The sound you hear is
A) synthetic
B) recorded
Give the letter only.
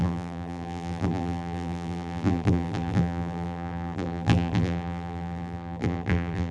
A